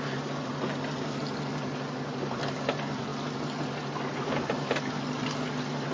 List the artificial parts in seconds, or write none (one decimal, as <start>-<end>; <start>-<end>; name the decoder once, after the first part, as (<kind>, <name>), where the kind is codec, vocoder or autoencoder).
none